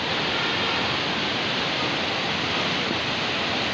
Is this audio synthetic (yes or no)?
no